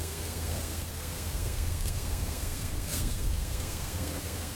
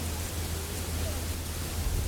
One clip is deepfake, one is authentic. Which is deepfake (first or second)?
first